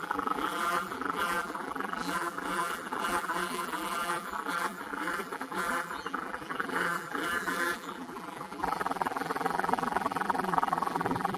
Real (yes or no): no